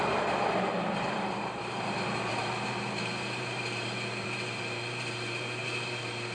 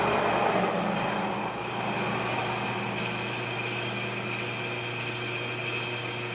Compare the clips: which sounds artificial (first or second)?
first